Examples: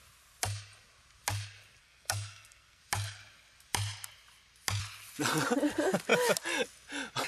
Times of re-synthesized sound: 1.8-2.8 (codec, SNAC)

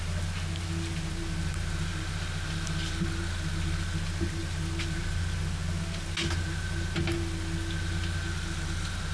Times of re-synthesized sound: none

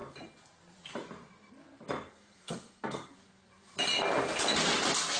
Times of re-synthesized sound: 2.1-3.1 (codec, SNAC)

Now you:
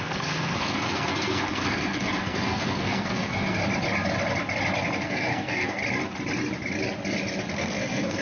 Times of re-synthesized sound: 0.0-3.6 (codec, SNAC); 5.0-5.8; 7.5-8.2

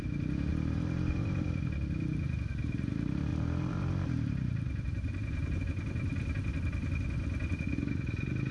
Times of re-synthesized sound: 0.5-1.6 (vocoder, BigVGAN v2); 3.3-5.6

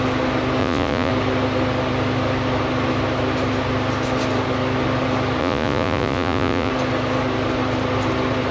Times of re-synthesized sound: 0.6-1.1 (vocoder, Vocos); 5.4-6.7

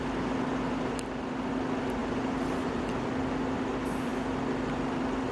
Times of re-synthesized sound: none

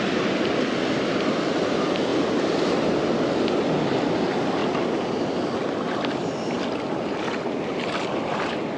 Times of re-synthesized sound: none